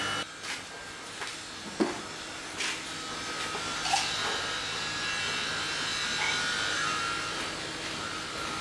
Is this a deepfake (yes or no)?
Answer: no